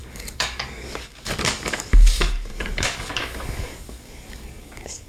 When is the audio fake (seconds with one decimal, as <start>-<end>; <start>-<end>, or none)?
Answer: 0.0-5.1